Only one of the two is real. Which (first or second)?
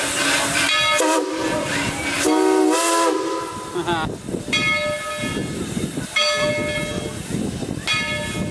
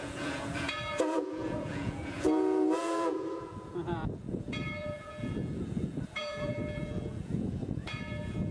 first